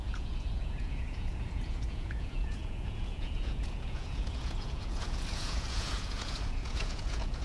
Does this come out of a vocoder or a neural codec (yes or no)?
yes